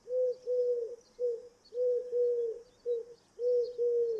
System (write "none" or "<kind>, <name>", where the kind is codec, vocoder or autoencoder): none